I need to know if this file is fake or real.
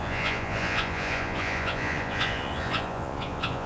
fake